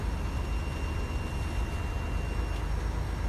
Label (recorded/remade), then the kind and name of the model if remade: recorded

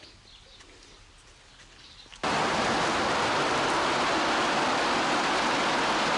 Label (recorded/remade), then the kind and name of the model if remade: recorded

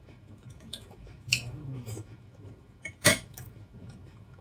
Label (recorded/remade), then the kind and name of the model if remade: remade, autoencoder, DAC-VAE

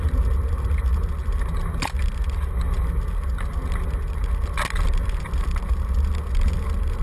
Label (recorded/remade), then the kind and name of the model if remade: recorded